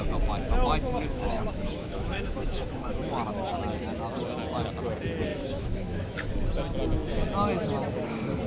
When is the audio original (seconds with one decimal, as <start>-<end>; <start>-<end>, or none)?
0.0-0.9; 3.4-5.3; 6.3-8.5